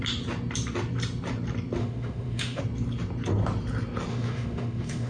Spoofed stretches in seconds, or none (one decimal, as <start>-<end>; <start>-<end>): 1.8-2.6; 4.1-5.1